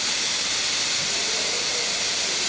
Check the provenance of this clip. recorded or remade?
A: recorded